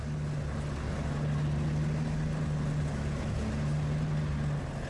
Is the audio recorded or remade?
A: recorded